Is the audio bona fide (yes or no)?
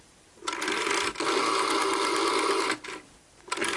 yes